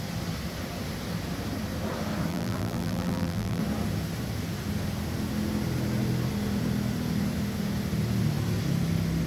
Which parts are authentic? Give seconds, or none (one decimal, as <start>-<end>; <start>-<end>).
0.0-2.3; 3.6-9.3